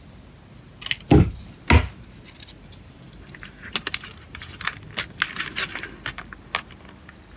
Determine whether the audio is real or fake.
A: real